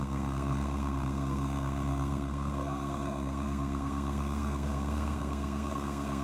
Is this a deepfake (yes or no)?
yes